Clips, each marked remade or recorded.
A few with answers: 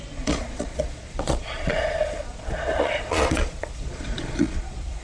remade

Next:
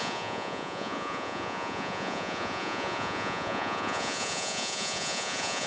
remade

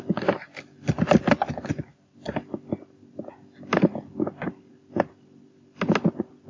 recorded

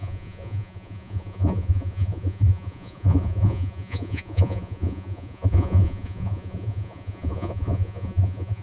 remade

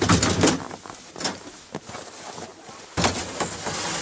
recorded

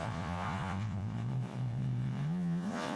remade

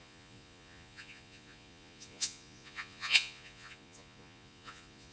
remade